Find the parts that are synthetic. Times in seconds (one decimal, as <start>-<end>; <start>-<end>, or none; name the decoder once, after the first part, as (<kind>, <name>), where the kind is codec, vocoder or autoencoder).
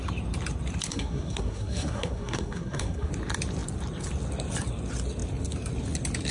0.9-3.1 (codec, SNAC)